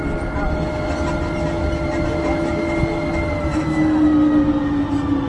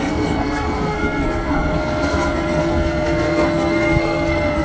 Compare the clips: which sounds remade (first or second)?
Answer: second